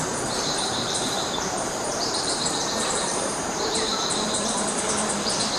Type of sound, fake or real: fake